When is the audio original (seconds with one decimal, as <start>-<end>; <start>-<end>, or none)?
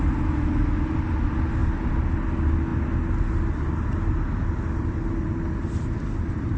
0.0-6.6